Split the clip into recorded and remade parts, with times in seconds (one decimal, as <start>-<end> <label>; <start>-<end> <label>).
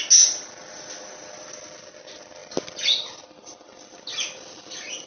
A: 0.0-5.1 recorded